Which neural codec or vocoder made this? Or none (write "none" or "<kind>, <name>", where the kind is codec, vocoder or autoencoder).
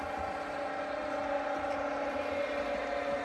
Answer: none